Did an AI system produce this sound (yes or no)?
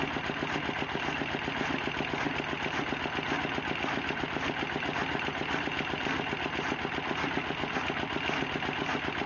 no